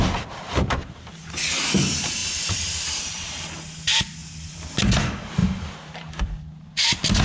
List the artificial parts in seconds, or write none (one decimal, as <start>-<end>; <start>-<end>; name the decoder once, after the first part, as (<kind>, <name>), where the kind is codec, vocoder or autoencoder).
2.2-3.3 (vocoder, BigVGAN v2); 4.2-4.8; 5.4-6.4